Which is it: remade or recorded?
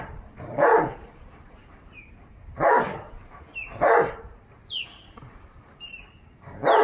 remade